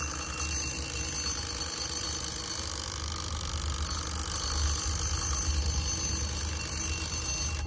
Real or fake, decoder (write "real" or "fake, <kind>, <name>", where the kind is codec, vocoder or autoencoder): real